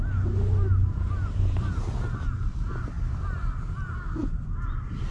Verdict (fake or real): real